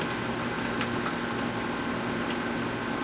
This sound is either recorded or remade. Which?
recorded